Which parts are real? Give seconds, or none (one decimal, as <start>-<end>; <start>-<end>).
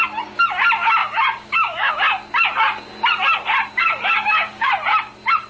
0.0-1.0; 1.9-3.8; 4.7-5.5